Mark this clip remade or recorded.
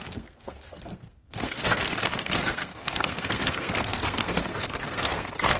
remade